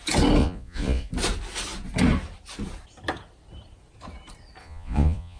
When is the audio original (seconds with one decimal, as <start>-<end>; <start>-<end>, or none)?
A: 0.0-0.4; 1.1-4.6